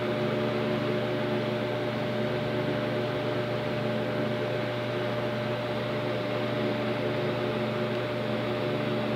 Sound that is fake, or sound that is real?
real